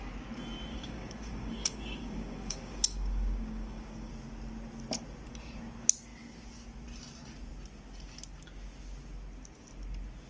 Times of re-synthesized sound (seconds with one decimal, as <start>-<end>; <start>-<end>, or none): 0.7-4.1